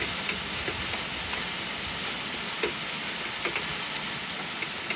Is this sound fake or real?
real